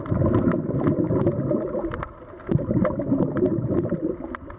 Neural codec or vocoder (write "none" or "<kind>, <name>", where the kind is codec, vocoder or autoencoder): none